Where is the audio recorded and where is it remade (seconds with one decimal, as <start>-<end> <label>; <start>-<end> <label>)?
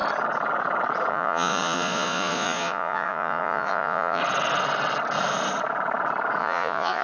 0.0-1.1 recorded; 1.1-4.2 remade; 4.2-6.4 recorded; 6.4-7.0 remade